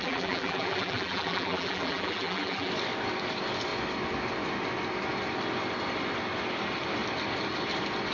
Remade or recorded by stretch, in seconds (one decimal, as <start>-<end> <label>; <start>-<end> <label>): 0.0-2.7 remade; 2.7-8.1 recorded